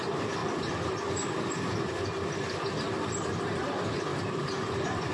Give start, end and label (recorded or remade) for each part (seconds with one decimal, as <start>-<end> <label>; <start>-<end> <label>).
0.0-0.4 recorded; 0.4-2.7 remade; 2.7-4.1 recorded; 4.1-5.1 remade